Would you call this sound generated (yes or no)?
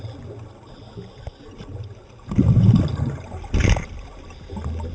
no